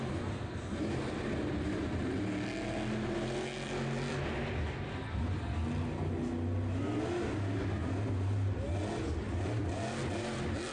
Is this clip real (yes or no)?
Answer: yes